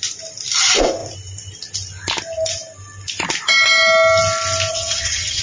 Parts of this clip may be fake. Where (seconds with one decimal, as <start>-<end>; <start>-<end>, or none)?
4.7-5.4